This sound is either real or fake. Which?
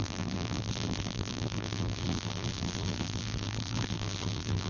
fake